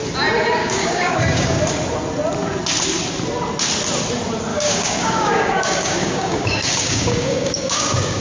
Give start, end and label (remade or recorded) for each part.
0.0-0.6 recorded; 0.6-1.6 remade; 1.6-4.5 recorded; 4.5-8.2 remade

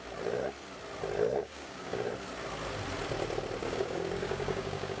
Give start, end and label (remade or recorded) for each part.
0.0-1.4 recorded; 1.4-2.1 remade; 2.1-3.6 recorded; 3.6-5.0 remade